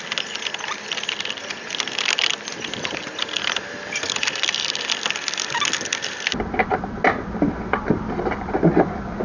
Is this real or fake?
real